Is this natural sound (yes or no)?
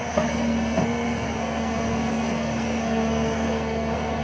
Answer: no